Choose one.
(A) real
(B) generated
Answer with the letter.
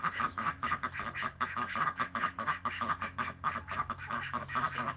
B